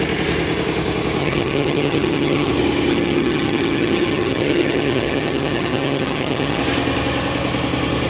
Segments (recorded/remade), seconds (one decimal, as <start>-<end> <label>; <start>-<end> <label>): 0.0-1.2 recorded; 1.2-2.5 remade; 2.5-2.9 recorded; 2.9-6.6 remade; 6.6-8.1 recorded